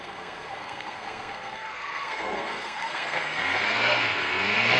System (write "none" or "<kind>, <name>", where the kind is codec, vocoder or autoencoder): codec, SNAC